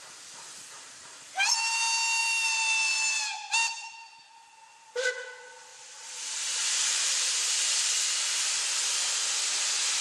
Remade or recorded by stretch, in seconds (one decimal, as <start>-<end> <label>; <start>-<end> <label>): 0.0-0.5 recorded; 0.5-1.1 remade; 1.1-5.7 recorded; 5.7-7.3 remade; 7.3-10.0 recorded